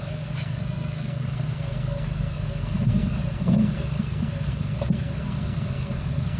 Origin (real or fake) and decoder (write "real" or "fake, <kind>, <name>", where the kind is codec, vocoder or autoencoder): fake, codec, SNAC